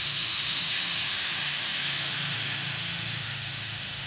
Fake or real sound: fake